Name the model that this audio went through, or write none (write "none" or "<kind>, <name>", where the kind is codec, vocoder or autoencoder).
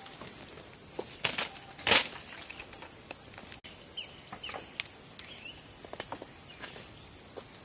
none